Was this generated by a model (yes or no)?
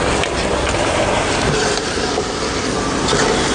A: no